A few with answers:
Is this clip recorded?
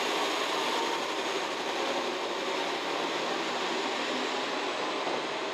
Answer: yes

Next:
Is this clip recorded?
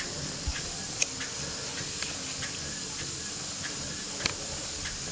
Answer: yes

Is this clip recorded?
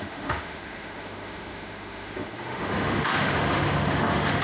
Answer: no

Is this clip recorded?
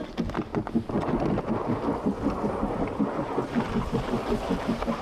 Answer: yes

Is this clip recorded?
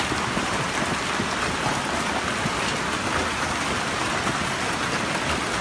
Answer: no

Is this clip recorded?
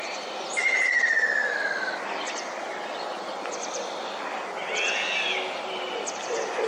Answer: yes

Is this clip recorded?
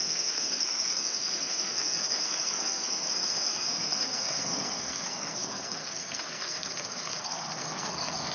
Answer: no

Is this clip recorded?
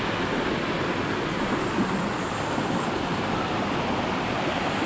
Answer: yes